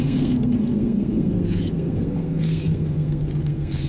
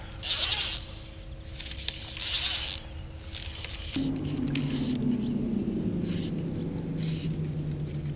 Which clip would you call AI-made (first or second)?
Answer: first